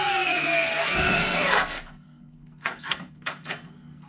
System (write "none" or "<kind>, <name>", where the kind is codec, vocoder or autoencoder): codec, SNAC